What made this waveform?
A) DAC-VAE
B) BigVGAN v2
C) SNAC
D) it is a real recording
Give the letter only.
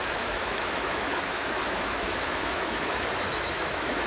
A